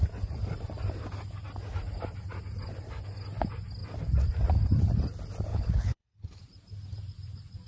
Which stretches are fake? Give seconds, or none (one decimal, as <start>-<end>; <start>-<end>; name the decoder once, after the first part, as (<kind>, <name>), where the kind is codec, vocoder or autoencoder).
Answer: 5.5-6.4 (codec, HILCodec)